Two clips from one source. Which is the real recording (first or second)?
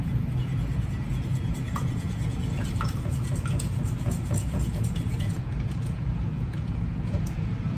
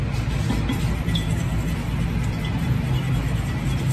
second